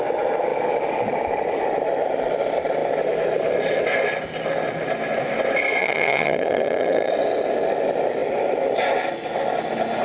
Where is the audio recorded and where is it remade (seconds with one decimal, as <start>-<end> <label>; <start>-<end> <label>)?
0.0-5.8 recorded; 5.8-7.1 remade; 7.1-10.0 recorded

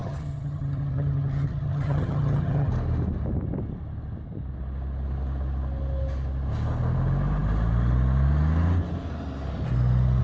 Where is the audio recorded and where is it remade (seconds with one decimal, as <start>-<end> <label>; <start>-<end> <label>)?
0.0-2.7 remade; 2.7-10.2 recorded

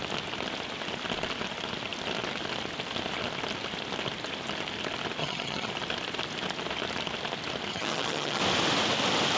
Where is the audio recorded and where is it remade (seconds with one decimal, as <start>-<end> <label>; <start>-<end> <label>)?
0.0-5.2 recorded; 5.2-5.7 remade; 5.7-7.7 recorded; 7.7-8.4 remade; 8.4-9.4 recorded

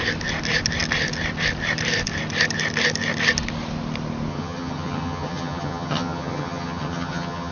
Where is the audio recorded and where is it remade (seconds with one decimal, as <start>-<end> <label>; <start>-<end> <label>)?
0.0-4.3 recorded; 4.3-7.5 remade